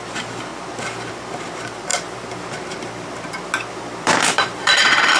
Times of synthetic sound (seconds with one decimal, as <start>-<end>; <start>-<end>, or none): 0.0-1.9; 3.7-5.2